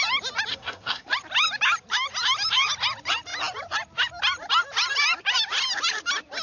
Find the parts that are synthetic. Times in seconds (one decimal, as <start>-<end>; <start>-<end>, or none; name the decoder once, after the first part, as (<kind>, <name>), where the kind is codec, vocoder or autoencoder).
0.5-1.1 (codec, SNAC)

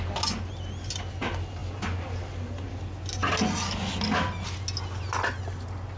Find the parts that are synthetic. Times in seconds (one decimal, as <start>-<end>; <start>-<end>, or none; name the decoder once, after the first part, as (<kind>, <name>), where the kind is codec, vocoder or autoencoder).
none

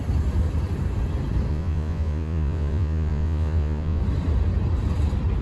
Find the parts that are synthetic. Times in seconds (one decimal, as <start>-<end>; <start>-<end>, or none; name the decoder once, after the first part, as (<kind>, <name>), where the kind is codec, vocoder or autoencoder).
1.5-4.0 (vocoder, Vocos)

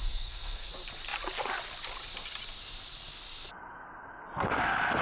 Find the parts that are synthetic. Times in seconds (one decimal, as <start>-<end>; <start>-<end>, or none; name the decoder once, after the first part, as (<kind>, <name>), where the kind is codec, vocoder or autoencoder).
0.0-0.7 (codec, SNAC)

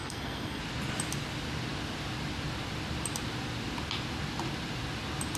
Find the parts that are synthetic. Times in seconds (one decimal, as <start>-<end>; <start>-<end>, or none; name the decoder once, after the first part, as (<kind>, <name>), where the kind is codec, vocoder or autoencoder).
0.0-0.6 (codec, SNAC)

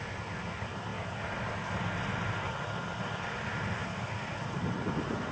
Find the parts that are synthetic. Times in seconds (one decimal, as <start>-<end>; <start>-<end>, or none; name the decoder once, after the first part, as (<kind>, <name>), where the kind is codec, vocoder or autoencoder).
0.9-1.8 (vocoder, BigVGAN v2)